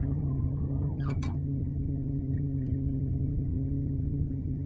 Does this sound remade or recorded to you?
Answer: remade